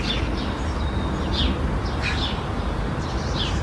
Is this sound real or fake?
real